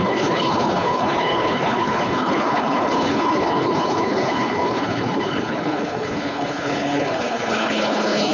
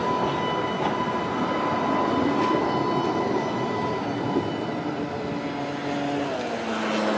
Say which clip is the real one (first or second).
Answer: second